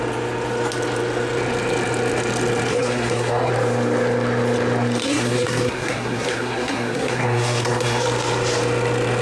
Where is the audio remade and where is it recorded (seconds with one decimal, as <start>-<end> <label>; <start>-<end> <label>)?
0.0-2.7 recorded; 2.7-3.5 remade; 3.5-5.0 recorded; 5.0-8.0 remade; 8.0-9.2 recorded